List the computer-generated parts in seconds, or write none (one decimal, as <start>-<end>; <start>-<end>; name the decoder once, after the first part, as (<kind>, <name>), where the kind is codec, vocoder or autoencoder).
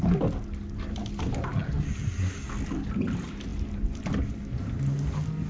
none